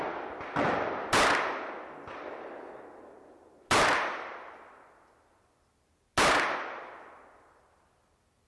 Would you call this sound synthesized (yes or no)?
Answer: no